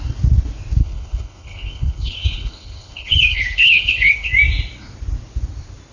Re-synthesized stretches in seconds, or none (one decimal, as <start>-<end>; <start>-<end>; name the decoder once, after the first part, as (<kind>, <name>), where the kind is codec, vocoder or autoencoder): 0.8-4.3 (codec, HILCodec)